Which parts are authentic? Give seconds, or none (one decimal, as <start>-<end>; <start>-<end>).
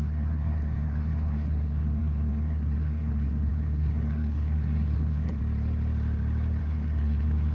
5.4-6.6